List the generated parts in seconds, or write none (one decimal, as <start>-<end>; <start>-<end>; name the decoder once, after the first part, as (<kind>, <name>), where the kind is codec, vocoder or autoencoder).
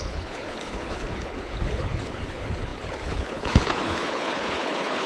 0.0-5.1 (codec, HILCodec)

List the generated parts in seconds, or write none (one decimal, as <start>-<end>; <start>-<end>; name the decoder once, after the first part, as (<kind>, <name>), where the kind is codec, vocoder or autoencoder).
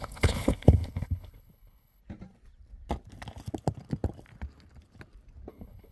0.0-2.0 (codec, HILCodec); 5.5-5.9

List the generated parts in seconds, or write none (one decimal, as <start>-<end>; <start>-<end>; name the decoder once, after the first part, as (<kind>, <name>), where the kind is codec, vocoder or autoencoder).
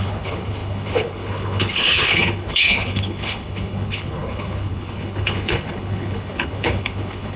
0.0-7.4 (codec, HILCodec)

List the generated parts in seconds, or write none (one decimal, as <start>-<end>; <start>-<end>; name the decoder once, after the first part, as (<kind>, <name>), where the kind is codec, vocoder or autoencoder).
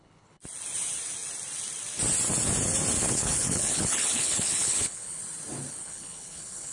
0.0-0.4 (codec, HILCodec); 3.0-5.2; 5.7-6.7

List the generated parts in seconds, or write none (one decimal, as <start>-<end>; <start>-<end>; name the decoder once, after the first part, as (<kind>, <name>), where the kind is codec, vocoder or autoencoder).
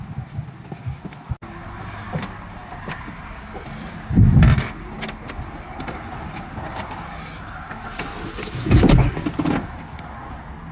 none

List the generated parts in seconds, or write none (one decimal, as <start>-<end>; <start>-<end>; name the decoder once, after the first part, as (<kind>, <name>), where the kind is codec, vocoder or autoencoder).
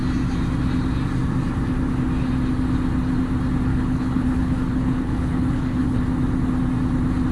3.7-6.0 (codec, HILCodec)